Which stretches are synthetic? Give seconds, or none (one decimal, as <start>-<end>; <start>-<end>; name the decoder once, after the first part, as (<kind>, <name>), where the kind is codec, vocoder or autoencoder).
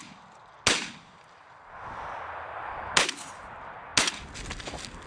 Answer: none